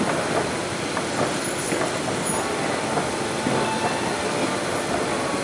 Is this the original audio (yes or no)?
yes